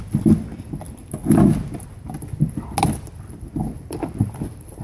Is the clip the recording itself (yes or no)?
yes